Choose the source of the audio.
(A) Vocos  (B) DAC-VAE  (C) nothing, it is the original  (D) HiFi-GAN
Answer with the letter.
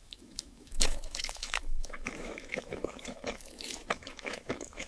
B